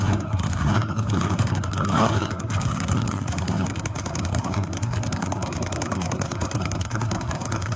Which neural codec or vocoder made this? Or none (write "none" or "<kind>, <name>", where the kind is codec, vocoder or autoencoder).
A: codec, SNAC